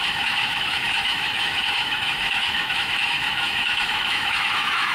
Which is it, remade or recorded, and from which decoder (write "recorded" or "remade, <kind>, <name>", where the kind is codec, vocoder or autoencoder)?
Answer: remade, autoencoder, DAC-VAE